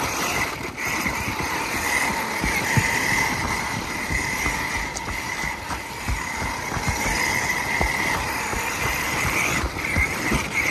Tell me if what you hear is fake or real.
real